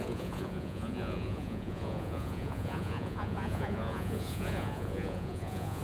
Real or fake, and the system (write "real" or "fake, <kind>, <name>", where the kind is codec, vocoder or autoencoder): fake, vocoder, Vocos